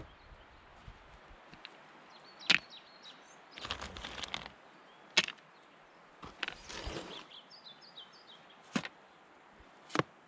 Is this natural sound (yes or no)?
yes